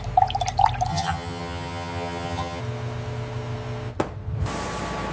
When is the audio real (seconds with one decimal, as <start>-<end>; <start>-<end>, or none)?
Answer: 0.0-0.9; 2.6-5.1

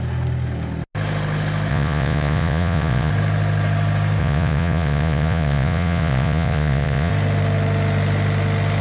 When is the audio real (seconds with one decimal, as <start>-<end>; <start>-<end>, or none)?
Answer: 0.0-1.7; 3.1-4.2; 7.1-8.8

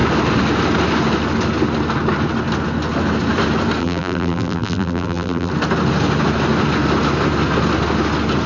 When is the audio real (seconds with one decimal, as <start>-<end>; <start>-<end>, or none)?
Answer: 0.0-3.8; 5.5-8.5

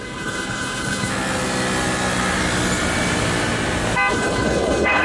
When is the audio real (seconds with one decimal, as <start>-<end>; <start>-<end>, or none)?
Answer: 1.1-4.1